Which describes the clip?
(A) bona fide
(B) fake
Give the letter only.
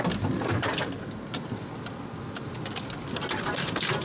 A